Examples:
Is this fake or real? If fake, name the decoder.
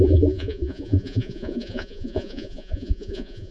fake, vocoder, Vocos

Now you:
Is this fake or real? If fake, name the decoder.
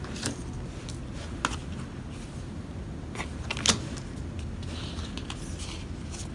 real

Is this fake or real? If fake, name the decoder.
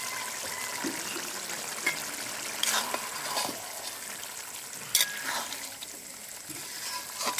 real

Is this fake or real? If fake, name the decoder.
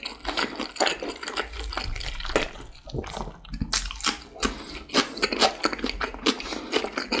real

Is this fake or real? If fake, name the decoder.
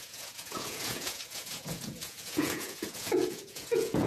fake, vocoder, Vocos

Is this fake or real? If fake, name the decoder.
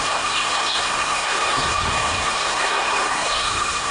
fake, codec, SNAC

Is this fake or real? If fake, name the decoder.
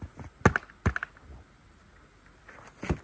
real